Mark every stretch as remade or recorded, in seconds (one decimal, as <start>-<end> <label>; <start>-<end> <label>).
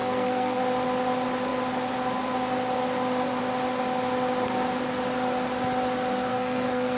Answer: 0.0-0.6 remade; 0.6-6.3 recorded; 6.3-7.0 remade